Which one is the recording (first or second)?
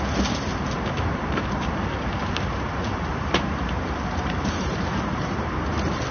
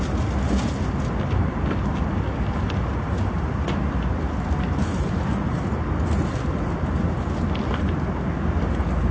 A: second